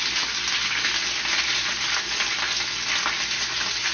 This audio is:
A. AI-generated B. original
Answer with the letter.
B